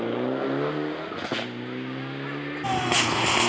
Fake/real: real